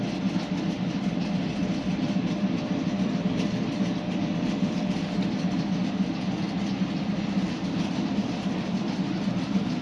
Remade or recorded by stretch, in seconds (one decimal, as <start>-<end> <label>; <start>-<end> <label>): 0.0-5.8 remade; 5.8-6.7 recorded; 6.7-9.8 remade